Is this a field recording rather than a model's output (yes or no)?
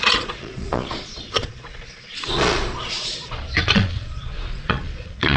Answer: no